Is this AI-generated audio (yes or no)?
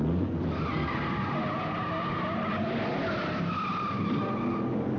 no